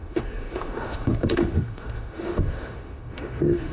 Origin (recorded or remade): remade